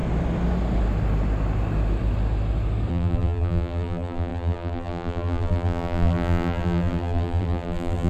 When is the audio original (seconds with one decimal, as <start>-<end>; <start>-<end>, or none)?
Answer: 0.0-2.9